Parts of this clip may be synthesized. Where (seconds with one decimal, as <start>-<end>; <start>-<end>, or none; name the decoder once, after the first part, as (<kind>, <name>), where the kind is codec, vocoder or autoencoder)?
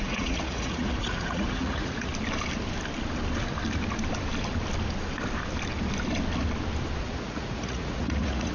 0.0-2.1 (vocoder, Vocos); 7.0-8.5